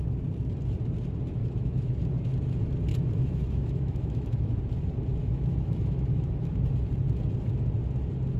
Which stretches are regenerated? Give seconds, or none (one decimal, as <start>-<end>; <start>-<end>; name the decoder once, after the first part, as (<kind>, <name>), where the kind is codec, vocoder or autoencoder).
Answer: 1.4-2.0 (autoencoder, DAC-VAE); 2.9-4.5; 5.2-6.5